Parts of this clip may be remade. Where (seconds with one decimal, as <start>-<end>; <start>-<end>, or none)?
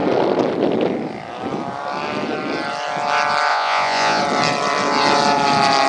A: 3.5-4.2